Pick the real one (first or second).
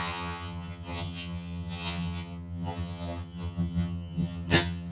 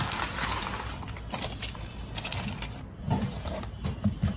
second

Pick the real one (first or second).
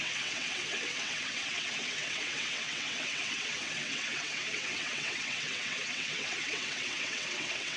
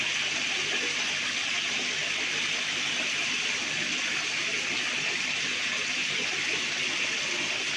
second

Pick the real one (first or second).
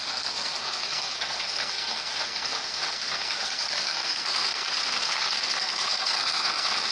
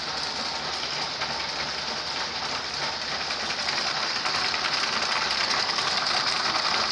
second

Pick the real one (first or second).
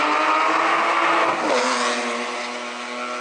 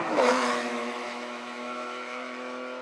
first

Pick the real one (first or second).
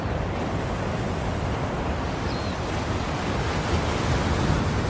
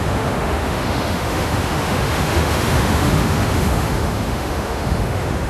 first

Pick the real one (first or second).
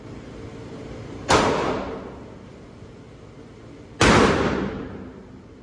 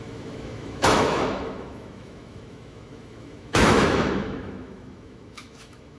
first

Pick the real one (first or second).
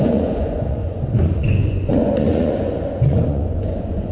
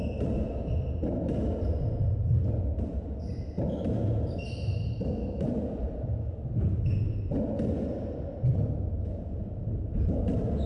second